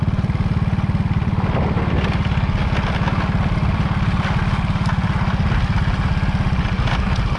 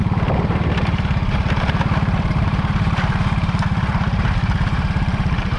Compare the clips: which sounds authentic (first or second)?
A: first